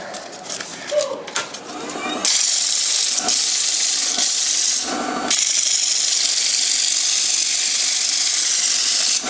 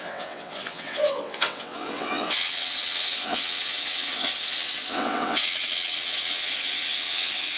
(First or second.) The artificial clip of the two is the second